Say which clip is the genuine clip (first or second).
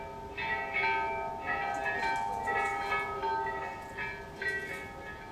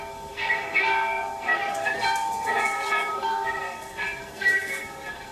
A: first